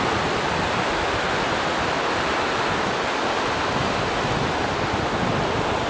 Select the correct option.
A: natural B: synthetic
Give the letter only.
A